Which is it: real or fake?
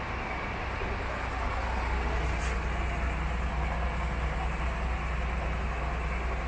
real